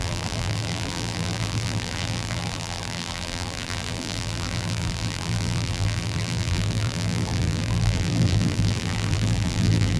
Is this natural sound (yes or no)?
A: no